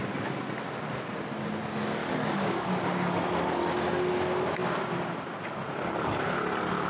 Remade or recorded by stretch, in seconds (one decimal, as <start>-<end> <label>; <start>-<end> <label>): 0.0-2.0 recorded; 2.0-3.3 remade; 3.3-6.9 recorded